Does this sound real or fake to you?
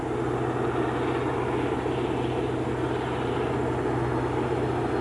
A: real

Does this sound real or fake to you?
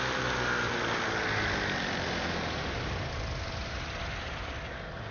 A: real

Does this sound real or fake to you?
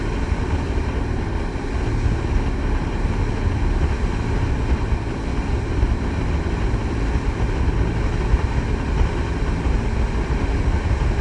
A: real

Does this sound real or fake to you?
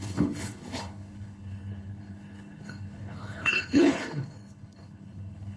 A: fake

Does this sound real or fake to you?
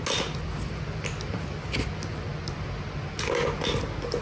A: real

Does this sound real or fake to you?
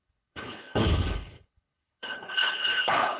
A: fake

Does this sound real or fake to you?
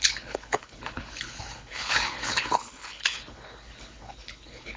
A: fake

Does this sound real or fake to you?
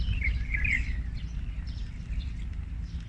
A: real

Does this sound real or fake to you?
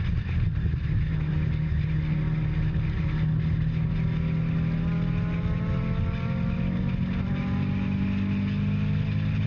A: real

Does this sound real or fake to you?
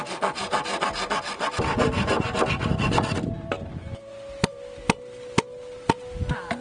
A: real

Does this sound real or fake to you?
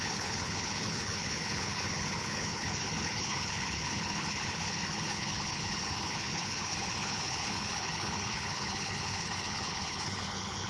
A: fake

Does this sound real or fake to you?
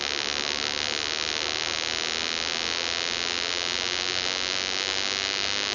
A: real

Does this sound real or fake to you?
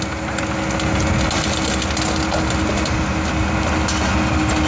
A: real